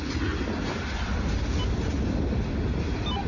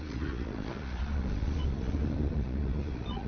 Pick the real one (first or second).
first